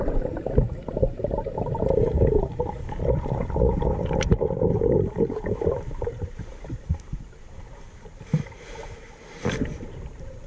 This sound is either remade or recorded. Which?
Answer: remade